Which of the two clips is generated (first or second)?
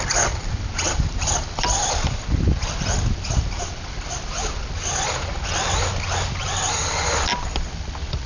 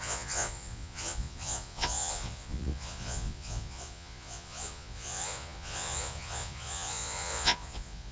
second